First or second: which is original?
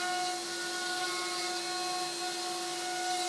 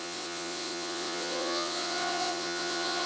first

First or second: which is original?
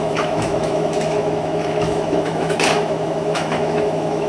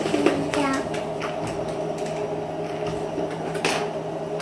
second